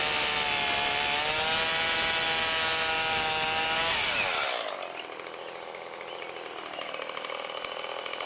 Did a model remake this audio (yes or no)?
no